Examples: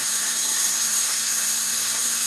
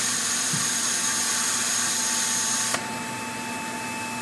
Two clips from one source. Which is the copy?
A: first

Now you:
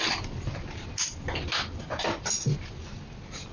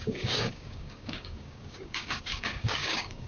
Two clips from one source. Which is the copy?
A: second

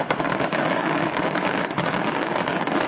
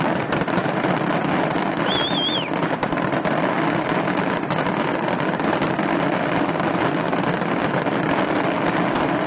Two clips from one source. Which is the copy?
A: first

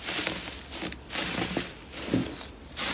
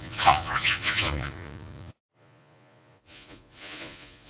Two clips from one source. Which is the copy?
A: second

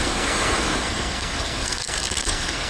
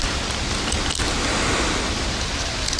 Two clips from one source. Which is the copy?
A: first